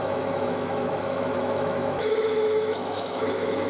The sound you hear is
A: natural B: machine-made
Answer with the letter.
B